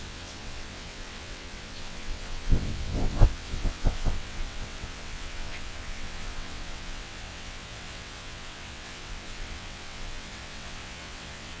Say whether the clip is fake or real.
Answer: fake